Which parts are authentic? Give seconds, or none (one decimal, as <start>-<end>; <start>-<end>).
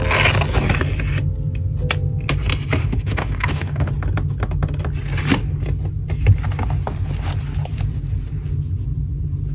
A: 0.0-2.8; 3.9-9.5